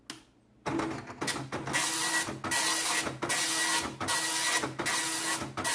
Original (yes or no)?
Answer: yes